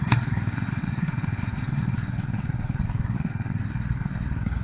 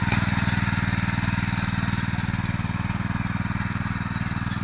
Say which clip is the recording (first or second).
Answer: second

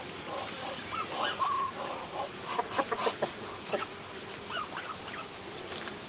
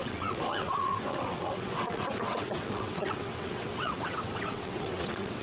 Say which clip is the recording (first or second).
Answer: first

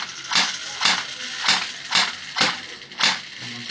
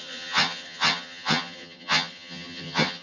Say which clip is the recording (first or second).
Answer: first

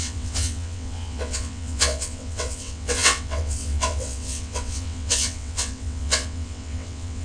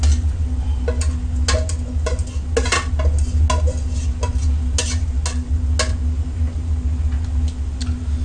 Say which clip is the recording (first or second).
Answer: second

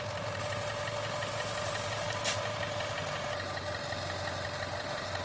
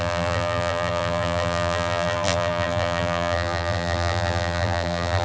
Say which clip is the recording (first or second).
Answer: first